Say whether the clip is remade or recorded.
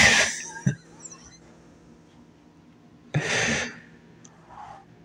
recorded